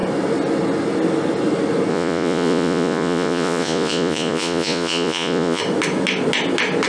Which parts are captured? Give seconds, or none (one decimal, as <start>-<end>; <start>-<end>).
0.0-1.9; 5.6-6.9